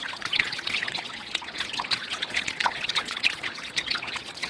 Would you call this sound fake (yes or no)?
yes